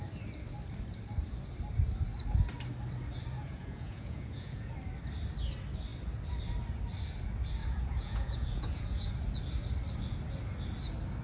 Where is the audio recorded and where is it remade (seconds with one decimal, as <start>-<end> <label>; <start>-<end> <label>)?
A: 0.0-3.4 recorded; 3.4-4.7 remade; 4.7-7.6 recorded; 7.6-9.1 remade; 9.1-11.2 recorded